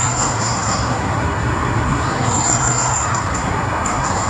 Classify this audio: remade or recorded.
remade